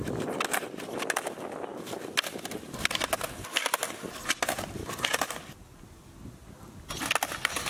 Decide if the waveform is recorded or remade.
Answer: recorded